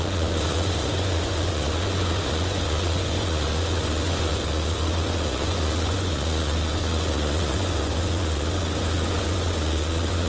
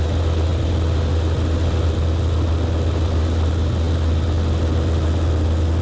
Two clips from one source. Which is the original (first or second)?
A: second